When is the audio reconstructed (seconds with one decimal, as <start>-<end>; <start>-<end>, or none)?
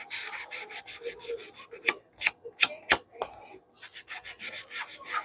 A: 0.0-0.8